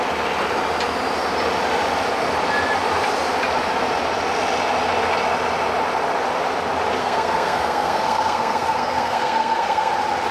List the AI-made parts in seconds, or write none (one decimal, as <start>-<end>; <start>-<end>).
7.0-9.9